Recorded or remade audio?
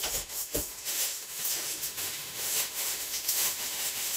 remade